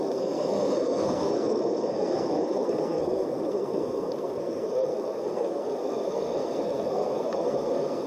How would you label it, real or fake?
fake